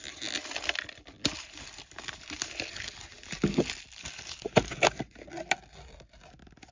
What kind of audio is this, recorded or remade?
recorded